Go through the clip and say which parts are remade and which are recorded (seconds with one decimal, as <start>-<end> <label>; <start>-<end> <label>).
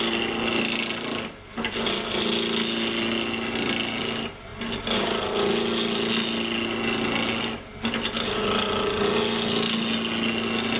0.0-10.8 recorded